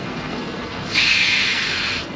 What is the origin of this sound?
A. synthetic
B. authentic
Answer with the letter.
A